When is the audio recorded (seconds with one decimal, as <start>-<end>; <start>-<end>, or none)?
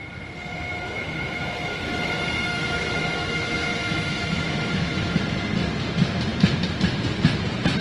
0.0-0.5; 5.2-7.8